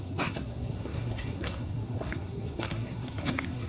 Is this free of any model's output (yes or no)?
no